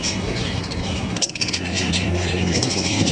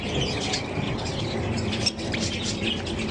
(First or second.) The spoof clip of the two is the first